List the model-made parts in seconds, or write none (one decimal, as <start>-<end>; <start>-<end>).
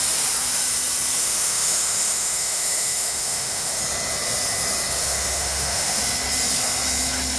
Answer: 1.2-3.8; 5.0-6.0